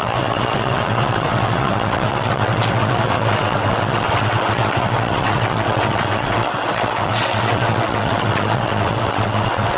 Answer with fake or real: fake